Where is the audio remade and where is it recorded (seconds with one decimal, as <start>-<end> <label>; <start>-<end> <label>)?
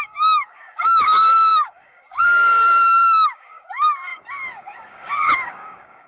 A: 0.0-6.1 remade